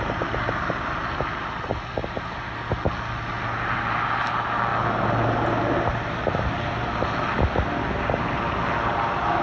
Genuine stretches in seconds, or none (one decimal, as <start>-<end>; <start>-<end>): 0.0-9.4